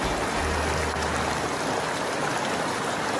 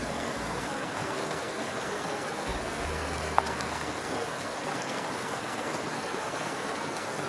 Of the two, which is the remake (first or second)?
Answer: second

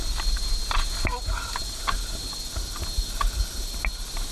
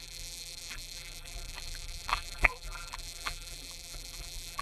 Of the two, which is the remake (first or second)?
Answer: second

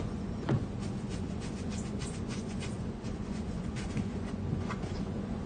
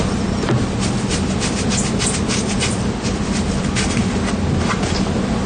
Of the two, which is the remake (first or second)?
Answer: first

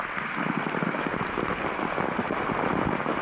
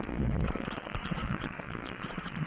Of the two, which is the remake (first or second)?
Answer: second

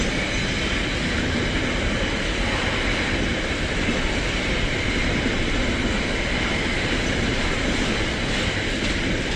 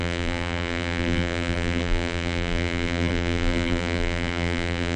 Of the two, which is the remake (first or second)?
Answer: second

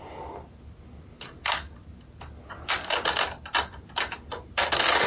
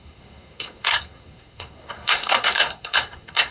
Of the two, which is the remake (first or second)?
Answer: second